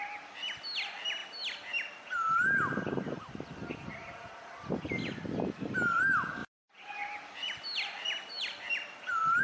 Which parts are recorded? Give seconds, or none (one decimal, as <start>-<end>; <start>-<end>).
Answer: 0.0-6.4